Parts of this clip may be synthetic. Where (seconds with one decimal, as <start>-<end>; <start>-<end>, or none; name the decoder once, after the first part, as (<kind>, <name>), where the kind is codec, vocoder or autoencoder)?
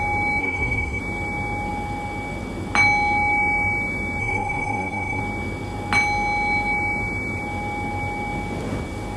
0.4-1.0 (codec, SNAC); 4.2-5.2